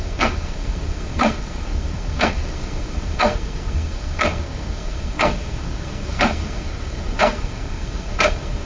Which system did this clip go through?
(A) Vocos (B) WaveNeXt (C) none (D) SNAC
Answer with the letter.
D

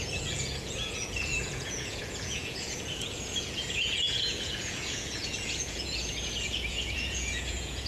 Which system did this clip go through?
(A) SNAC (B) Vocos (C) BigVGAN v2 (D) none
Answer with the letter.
B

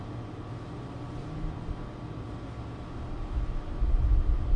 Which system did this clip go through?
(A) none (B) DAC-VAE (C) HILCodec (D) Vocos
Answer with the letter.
A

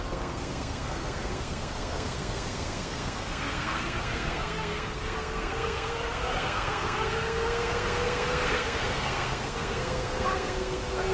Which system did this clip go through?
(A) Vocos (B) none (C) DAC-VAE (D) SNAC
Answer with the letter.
D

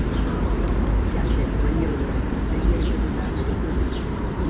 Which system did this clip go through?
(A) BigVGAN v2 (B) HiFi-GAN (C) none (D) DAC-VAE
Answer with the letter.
A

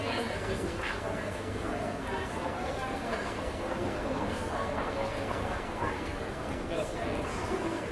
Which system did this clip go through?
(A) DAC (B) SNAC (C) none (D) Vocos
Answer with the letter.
B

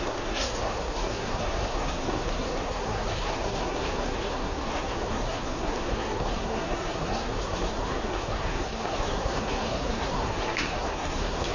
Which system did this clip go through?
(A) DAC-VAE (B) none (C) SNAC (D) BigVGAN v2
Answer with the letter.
C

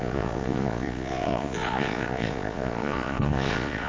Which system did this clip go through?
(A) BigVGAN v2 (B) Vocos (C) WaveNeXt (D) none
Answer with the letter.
B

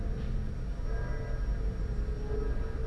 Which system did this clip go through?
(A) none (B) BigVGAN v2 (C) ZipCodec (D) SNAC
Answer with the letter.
A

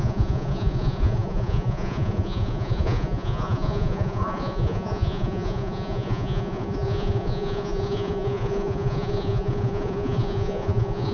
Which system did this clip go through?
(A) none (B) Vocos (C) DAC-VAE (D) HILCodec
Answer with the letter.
B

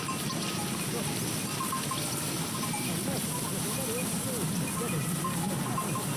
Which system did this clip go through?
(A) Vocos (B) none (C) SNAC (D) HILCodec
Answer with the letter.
B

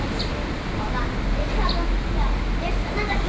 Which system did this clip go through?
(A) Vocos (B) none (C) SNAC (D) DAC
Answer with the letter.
B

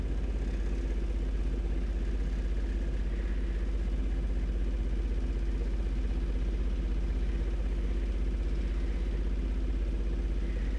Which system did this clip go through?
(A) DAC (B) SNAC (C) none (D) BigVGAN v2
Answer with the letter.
C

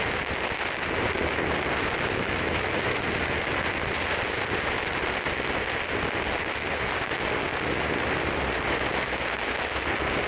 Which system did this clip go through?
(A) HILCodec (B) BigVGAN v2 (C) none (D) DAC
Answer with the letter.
C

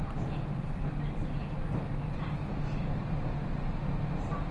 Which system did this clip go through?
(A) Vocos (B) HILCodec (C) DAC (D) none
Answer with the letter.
D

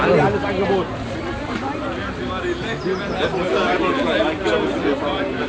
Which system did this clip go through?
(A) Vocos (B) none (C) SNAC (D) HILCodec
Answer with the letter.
B